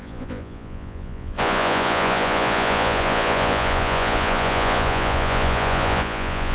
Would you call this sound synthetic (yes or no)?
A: yes